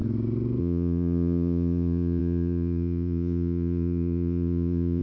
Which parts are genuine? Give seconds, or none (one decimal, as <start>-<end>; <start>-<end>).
0.0-0.6